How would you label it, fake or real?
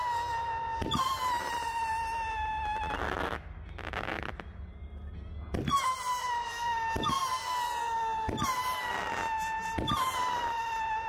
real